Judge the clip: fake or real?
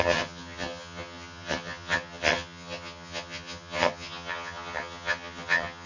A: fake